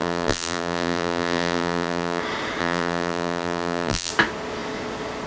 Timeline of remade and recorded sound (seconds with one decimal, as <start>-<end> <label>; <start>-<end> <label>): 0.0-2.2 remade; 2.2-2.6 recorded; 2.6-4.1 remade; 4.1-5.3 recorded